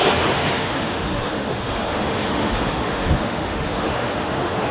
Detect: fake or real fake